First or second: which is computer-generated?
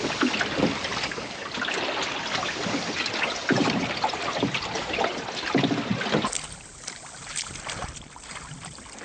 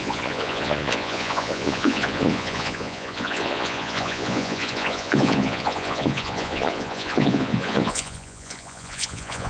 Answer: second